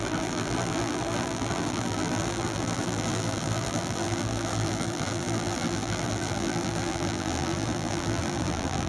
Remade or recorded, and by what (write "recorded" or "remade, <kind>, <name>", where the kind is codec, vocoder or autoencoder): remade, vocoder, BigVGAN v2